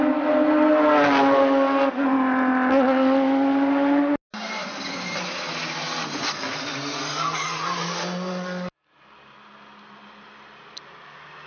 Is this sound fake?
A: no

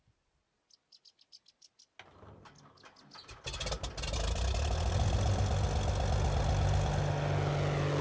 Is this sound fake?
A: no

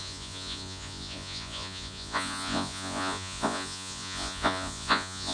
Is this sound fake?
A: yes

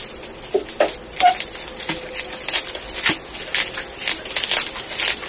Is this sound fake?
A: no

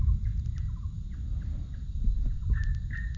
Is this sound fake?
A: no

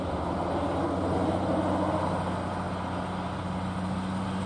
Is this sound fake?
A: no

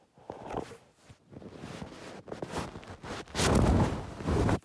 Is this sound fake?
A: no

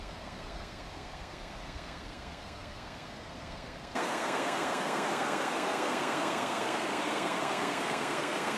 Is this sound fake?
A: yes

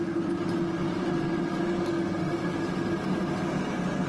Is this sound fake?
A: no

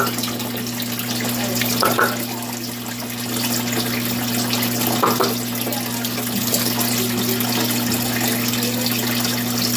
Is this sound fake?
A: no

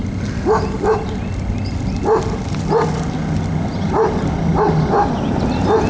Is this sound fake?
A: no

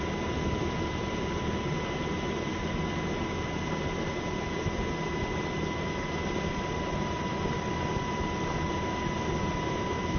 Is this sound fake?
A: no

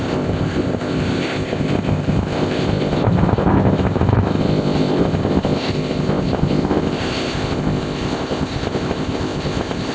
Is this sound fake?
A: yes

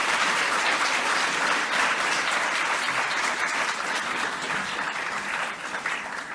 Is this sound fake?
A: yes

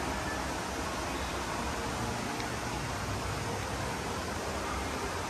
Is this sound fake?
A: no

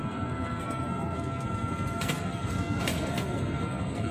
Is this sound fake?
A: yes